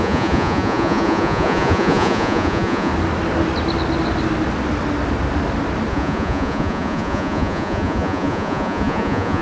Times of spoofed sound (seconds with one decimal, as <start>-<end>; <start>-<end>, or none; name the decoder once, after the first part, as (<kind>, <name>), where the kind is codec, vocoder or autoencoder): 0.0-2.9 (vocoder, Vocos); 5.9-9.4